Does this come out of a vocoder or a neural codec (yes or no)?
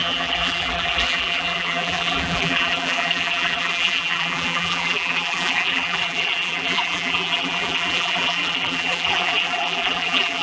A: yes